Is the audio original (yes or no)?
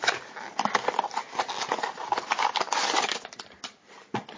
yes